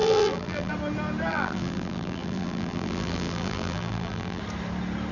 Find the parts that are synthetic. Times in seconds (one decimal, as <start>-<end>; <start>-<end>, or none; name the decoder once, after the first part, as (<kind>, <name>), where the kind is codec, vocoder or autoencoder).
0.0-0.7 (vocoder, BigVGAN v2); 1.3-4.4